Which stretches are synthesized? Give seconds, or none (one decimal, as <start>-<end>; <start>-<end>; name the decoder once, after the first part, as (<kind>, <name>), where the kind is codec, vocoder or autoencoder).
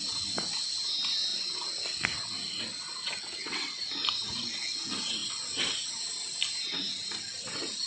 3.0-3.8 (vocoder, WaveNeXt)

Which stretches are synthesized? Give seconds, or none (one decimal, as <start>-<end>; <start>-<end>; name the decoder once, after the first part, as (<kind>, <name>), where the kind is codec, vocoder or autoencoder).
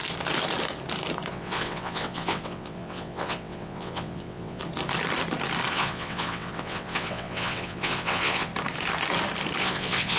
1.3-4.6 (vocoder, WaveNeXt); 5.7-8.5; 9.6-10.2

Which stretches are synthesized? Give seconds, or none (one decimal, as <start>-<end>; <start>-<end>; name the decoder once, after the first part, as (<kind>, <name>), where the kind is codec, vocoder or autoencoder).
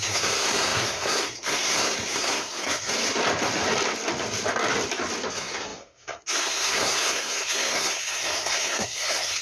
0.0-2.9 (codec, SNAC); 5.3-9.4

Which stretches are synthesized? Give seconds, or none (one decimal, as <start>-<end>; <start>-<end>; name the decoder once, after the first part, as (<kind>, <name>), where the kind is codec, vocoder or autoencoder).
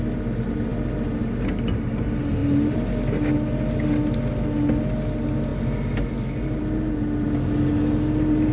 none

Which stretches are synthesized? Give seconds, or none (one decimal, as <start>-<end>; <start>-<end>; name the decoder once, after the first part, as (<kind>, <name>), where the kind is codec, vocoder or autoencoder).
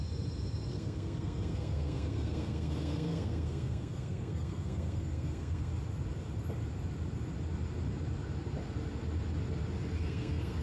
0.7-5.7 (codec, SNAC); 10.0-10.6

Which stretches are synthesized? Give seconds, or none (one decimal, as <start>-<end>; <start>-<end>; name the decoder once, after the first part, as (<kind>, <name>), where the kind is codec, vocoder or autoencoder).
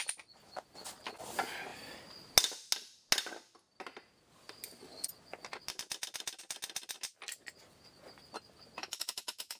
8.8-9.6 (autoencoder, DAC-VAE)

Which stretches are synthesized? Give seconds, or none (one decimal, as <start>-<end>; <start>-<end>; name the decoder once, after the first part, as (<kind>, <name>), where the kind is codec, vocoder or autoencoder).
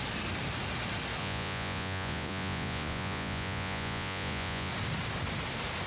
1.2-4.7 (vocoder, Vocos)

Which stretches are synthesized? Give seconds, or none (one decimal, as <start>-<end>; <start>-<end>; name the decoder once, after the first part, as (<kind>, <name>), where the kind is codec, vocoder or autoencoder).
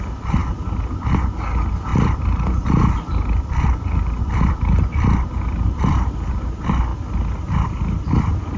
1.9-4.8 (vocoder, BigVGAN v2)